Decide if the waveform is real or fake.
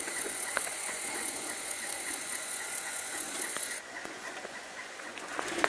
fake